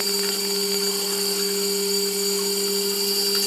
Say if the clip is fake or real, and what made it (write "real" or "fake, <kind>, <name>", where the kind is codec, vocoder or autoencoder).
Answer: real